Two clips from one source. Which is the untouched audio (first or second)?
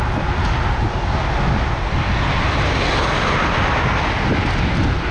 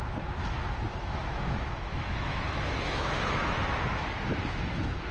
first